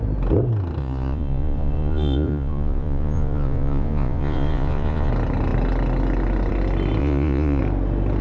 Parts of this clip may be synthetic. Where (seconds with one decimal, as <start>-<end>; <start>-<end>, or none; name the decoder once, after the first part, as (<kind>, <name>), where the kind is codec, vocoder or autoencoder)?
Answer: 0.8-5.1 (vocoder, Vocos); 7.0-7.6